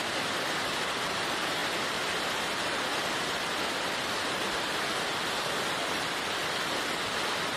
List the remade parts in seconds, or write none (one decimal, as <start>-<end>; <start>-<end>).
none